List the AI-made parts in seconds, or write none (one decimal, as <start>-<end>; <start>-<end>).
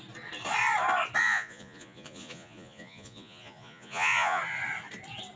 1.2-4.4